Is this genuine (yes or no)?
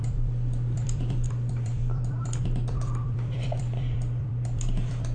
no